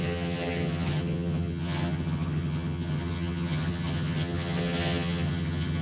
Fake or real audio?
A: fake